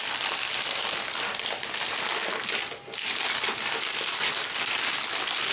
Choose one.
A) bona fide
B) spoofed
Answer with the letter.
A